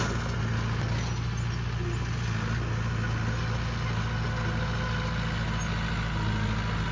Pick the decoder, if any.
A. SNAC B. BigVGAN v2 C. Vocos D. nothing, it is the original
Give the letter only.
D